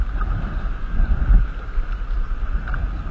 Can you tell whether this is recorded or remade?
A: recorded